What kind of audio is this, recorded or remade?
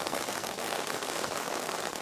remade